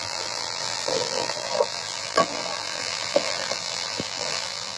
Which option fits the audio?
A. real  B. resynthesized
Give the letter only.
B